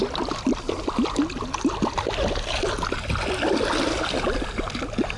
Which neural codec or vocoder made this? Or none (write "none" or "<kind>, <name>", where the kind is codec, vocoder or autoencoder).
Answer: none